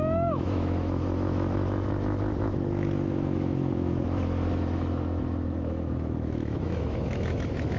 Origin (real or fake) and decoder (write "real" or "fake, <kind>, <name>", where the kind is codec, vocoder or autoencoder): fake, autoencoder, DAC-VAE